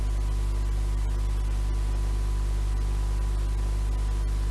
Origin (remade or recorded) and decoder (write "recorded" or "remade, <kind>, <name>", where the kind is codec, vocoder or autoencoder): recorded